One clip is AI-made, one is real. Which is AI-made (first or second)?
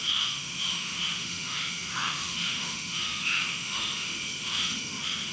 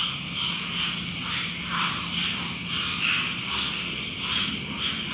first